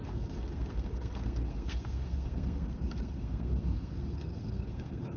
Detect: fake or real fake